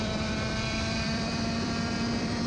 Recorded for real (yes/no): no